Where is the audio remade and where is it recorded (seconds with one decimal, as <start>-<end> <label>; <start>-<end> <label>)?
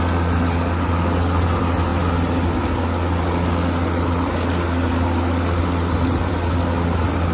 0.0-7.3 recorded